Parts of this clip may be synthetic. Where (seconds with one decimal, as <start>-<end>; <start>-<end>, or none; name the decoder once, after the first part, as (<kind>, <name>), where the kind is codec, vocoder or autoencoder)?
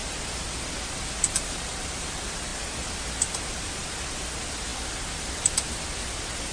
0.9-6.5 (vocoder, BigVGAN v2)